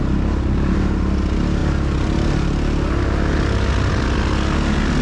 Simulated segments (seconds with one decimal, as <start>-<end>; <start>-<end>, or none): none